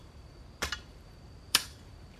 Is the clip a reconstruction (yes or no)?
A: yes